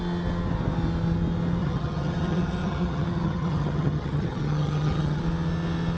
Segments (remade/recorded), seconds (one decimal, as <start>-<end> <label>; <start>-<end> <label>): 0.0-1.6 recorded; 1.6-5.2 remade; 5.2-6.0 recorded

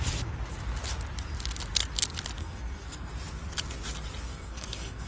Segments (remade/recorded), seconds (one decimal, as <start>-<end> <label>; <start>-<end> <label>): 0.0-2.4 recorded; 2.4-3.1 remade; 3.1-4.3 recorded; 4.3-5.1 remade

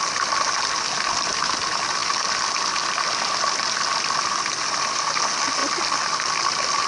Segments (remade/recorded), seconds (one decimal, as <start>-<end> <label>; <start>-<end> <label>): 0.0-6.9 recorded

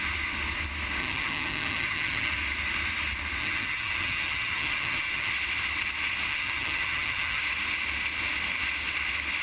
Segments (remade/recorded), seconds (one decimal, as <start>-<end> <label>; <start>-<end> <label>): 0.0-1.0 recorded; 1.0-2.3 remade; 2.3-3.4 recorded; 3.4-5.3 remade; 5.3-6.3 recorded; 6.3-7.4 remade; 7.4-9.4 recorded

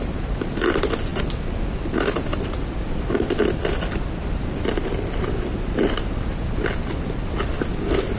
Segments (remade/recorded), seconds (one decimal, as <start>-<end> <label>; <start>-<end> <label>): 0.0-8.2 recorded

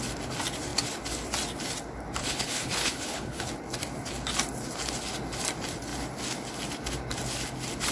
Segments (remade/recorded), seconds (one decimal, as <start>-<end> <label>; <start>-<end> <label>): 0.0-2.2 recorded; 2.2-3.5 remade; 3.5-7.9 recorded

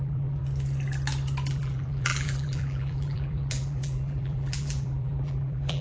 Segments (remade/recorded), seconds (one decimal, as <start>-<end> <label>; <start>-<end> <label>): 0.0-0.4 remade; 0.4-1.5 recorded; 1.5-5.8 remade

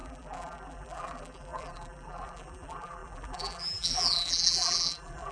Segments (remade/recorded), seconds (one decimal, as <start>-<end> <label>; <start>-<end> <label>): 0.0-5.3 remade